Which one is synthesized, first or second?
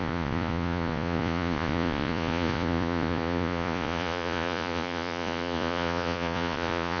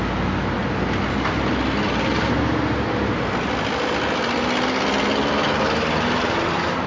first